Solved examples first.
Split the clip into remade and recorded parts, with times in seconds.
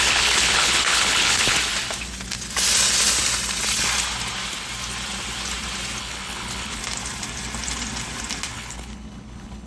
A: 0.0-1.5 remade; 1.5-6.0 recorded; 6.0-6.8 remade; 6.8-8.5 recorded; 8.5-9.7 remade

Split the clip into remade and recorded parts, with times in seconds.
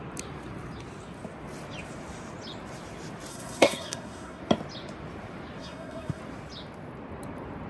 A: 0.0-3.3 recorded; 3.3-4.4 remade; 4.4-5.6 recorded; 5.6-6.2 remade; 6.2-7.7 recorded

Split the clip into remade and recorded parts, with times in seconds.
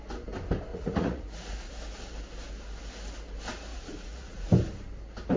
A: 0.0-0.7 recorded; 0.7-1.7 remade; 1.7-3.7 recorded; 3.7-4.5 remade; 4.5-5.4 recorded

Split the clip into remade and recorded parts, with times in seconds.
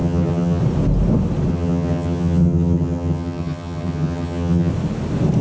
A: 0.0-0.6 remade; 0.6-1.5 recorded; 1.5-4.7 remade; 4.7-5.4 recorded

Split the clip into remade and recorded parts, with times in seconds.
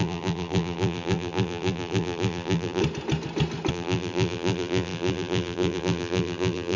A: 0.0-2.8 remade; 2.8-3.7 recorded; 3.7-6.8 remade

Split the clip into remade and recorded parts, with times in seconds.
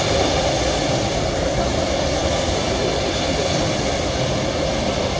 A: 0.0-5.2 recorded